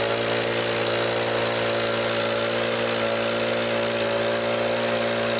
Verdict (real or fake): real